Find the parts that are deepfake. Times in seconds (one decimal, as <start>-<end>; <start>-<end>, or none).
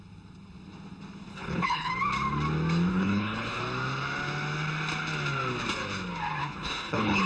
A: 1.3-1.9; 2.9-3.6; 6.4-7.3